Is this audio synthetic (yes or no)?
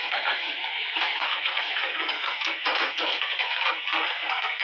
yes